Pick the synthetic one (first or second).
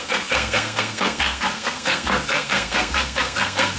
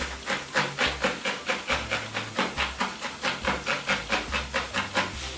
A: first